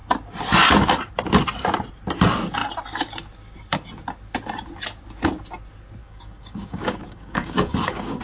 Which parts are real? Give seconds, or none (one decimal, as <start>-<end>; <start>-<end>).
0.0-6.0